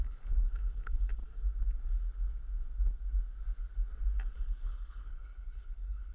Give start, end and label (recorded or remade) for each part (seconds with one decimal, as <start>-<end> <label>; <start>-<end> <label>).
0.0-1.2 remade; 1.2-4.3 recorded; 4.3-6.1 remade

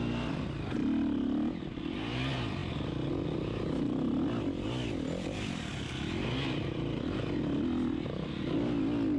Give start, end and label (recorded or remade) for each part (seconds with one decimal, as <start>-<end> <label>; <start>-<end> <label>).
0.0-9.2 recorded

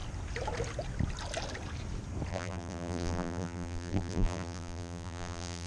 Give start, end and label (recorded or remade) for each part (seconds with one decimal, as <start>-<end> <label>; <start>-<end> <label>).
0.0-2.3 recorded; 2.3-5.7 remade

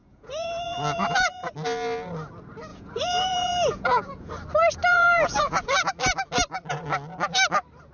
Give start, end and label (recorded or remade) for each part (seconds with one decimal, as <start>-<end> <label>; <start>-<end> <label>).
0.0-1.5 remade; 1.5-2.7 recorded; 2.7-4.3 remade; 4.3-4.9 recorded; 4.9-5.9 remade; 5.9-7.9 recorded

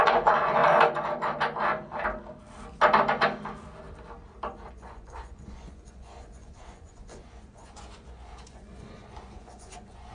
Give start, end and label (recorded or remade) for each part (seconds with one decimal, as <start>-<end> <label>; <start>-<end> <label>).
0.0-0.6 remade; 0.6-4.7 recorded; 4.7-10.1 remade

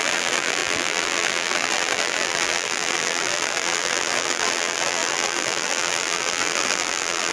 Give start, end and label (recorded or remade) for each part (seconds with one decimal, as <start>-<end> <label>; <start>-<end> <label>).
0.0-7.3 remade

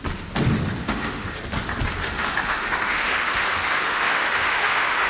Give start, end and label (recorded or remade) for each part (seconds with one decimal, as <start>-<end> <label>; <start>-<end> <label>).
0.0-0.8 recorded; 0.8-1.4 remade; 1.4-2.0 recorded; 2.0-5.1 remade

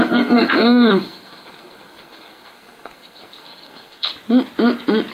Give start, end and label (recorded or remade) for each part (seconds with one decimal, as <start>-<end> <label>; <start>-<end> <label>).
0.0-4.1 remade; 4.1-5.1 recorded